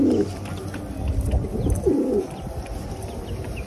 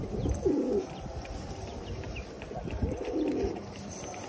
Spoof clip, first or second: second